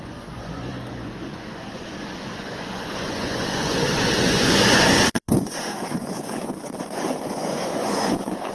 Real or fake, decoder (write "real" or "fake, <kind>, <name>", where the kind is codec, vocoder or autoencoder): fake, vocoder, Vocos